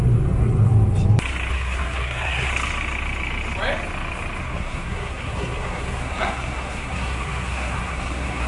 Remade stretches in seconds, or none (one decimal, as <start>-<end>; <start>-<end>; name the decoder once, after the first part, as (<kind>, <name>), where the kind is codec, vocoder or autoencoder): 1.5-2.5 (codec, SNAC); 4.4-8.5